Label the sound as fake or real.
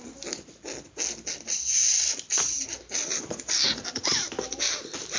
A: real